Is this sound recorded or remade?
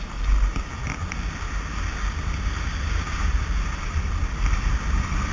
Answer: recorded